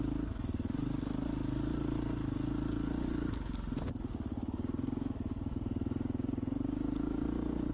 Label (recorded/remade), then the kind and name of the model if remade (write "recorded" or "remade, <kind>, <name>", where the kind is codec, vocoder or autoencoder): recorded